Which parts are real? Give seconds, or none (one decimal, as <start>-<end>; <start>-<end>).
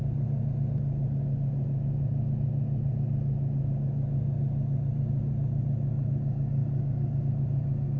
0.0-8.0